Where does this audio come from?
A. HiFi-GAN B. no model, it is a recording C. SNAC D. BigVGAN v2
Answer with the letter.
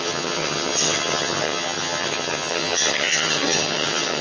A